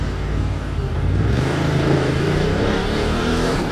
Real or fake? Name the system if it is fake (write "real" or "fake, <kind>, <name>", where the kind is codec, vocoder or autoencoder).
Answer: fake, codec, DAC